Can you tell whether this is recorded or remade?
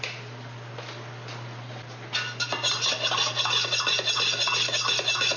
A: recorded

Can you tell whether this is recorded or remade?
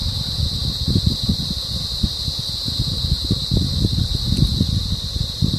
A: recorded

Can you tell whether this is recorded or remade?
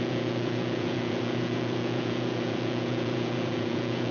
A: remade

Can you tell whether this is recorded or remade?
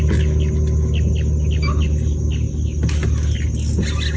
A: recorded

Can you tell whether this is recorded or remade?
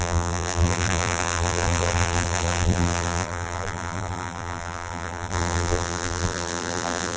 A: remade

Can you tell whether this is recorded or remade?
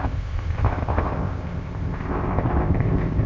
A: remade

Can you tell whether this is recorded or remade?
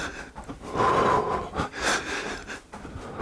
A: recorded